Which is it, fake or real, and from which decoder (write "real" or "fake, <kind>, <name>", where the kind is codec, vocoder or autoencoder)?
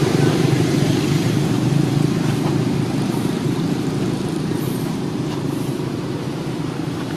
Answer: fake, vocoder, BigVGAN v2